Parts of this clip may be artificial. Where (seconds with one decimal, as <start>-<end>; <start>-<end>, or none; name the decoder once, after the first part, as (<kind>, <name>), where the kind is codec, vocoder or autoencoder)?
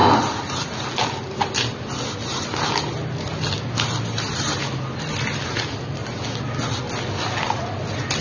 none